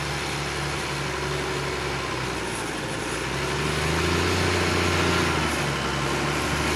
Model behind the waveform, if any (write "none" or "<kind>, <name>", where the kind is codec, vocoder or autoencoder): none